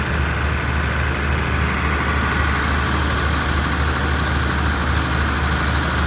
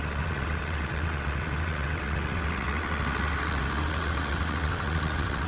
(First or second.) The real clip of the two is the first